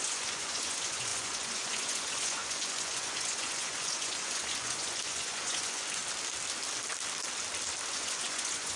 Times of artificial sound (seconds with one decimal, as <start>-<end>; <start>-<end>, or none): 0.0-6.0; 7.9-8.8